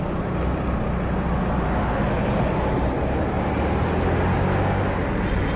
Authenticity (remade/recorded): recorded